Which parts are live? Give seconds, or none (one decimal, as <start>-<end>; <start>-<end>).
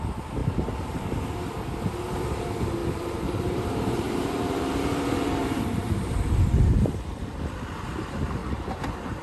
0.0-0.4; 1.2-2.8; 6.7-9.2